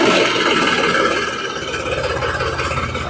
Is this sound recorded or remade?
recorded